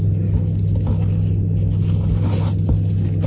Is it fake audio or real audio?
real